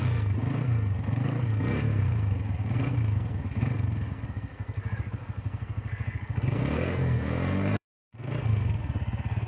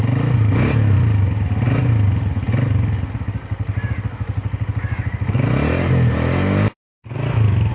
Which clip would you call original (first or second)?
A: second